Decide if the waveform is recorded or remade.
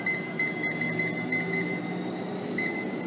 recorded